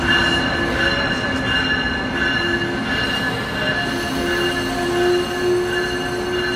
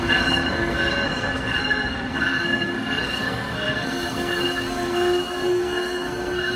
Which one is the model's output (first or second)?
second